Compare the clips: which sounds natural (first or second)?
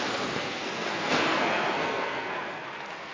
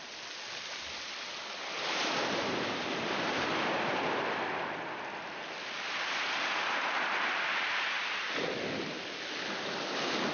second